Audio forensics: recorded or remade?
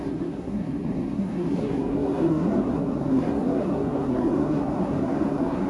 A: remade